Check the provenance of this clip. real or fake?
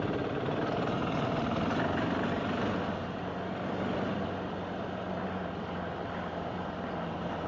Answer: real